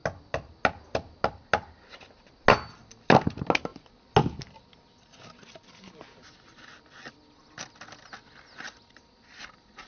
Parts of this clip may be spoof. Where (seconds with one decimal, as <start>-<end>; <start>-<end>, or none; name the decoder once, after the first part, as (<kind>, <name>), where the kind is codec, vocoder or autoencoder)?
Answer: none